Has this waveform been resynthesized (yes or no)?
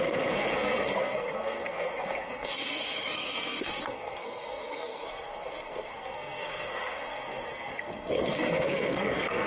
yes